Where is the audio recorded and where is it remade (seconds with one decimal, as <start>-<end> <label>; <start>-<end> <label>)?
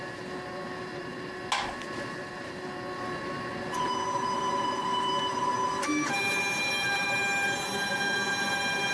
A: 0.0-8.9 recorded